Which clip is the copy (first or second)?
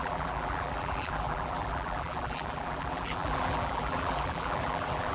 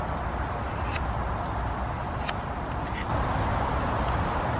first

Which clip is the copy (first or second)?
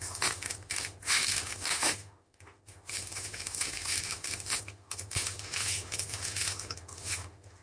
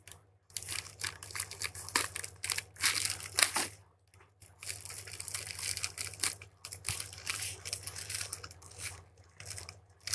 first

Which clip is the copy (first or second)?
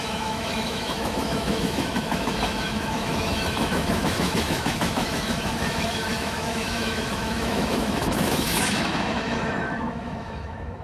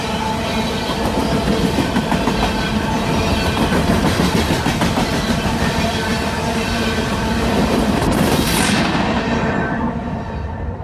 first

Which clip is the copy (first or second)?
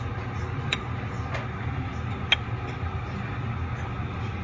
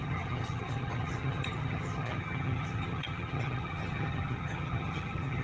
second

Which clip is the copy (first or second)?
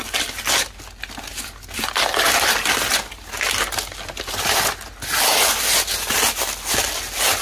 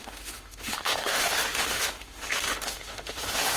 second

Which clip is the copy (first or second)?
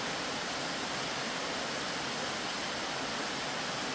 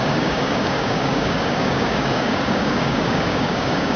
second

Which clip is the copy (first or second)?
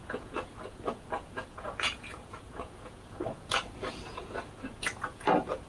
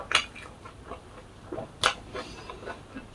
first